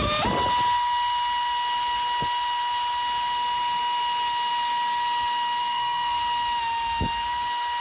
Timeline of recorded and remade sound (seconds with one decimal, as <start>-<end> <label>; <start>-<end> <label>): 0.0-5.6 recorded; 5.6-6.2 remade; 6.2-7.8 recorded